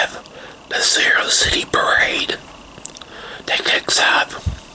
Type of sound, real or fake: fake